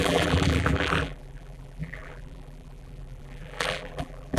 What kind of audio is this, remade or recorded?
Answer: remade